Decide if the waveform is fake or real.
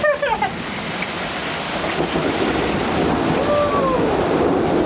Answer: real